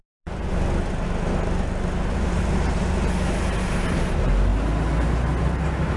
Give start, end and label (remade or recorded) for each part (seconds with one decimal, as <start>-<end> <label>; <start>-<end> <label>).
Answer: 0.0-6.0 recorded